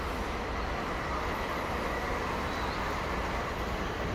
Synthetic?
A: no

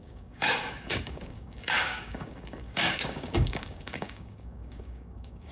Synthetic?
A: yes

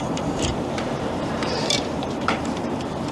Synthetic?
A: yes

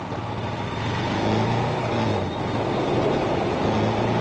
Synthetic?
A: no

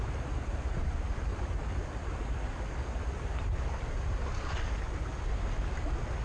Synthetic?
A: no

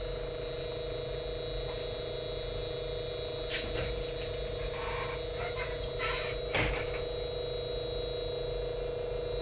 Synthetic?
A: no